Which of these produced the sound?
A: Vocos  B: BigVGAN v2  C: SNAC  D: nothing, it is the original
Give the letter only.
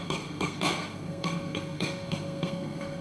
C